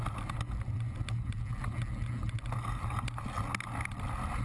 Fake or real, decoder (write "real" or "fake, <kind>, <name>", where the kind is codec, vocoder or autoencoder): real